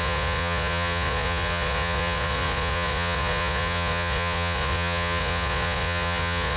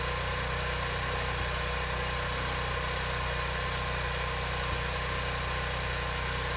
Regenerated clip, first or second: first